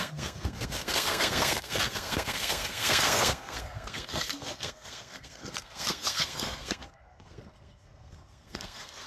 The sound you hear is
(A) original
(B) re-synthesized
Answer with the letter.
B